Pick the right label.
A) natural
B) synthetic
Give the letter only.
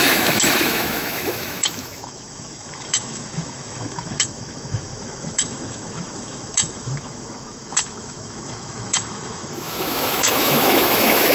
B